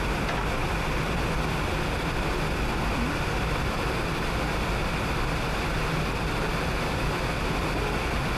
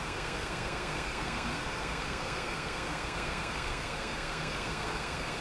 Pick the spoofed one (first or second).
second